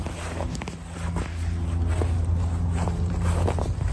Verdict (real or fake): real